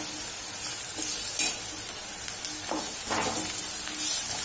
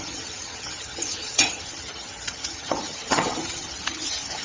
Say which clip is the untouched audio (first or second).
first